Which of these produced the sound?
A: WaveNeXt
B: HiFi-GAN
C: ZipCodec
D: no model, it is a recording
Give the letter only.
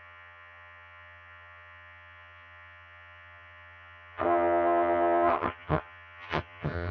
B